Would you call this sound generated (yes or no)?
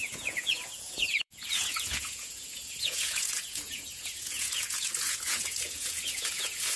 yes